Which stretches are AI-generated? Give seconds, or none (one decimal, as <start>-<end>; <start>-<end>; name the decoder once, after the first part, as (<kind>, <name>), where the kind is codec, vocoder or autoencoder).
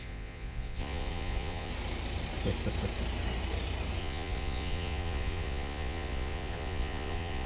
0.0-1.7 (vocoder, Vocos); 4.0-7.5